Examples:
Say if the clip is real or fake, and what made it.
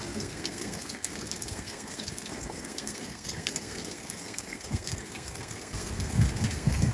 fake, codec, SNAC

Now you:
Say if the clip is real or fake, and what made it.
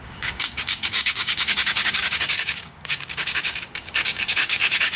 fake, codec, DAC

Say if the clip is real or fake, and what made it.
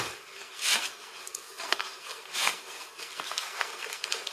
fake, codec, SNAC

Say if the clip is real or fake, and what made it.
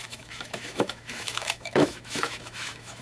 fake, autoencoder, DAC-VAE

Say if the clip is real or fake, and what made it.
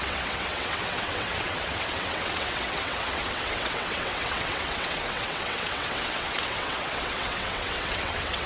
fake, vocoder, WaveNeXt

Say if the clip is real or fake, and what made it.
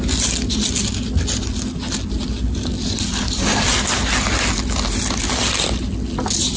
real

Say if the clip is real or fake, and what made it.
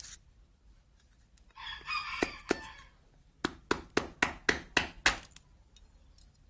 real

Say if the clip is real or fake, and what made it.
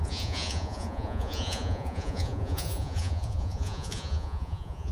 fake, vocoder, Vocos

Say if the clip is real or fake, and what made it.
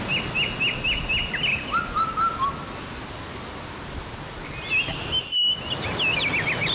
real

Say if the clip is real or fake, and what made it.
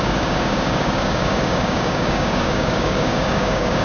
fake, codec, DAC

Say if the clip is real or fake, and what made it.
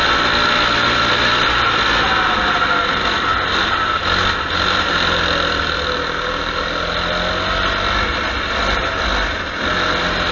real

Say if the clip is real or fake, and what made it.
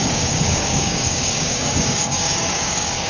fake, codec, DAC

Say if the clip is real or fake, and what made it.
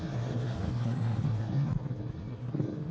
fake, codec, SNAC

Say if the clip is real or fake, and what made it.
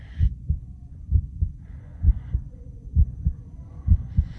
fake, vocoder, Vocos